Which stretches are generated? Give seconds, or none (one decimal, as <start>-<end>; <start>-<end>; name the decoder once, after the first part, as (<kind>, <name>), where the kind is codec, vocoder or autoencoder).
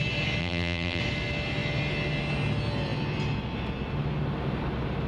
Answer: 0.4-1.0 (vocoder, BigVGAN v2)